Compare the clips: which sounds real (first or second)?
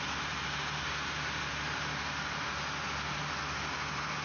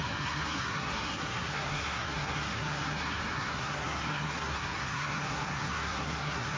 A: first